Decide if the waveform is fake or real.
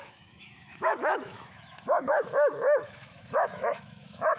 fake